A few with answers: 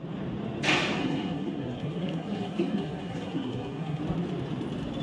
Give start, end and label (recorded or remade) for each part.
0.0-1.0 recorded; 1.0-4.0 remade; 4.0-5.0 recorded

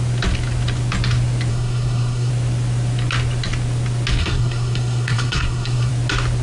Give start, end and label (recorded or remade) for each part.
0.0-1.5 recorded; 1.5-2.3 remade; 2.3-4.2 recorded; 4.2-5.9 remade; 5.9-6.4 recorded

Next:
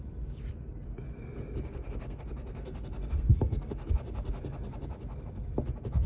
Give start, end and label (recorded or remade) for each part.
0.0-1.7 recorded; 1.7-3.9 remade; 3.9-6.1 recorded

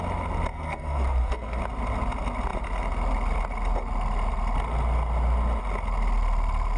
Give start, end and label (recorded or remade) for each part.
0.0-0.5 recorded; 0.5-1.6 remade; 1.6-6.8 recorded